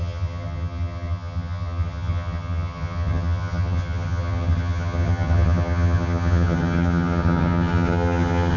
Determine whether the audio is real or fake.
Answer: fake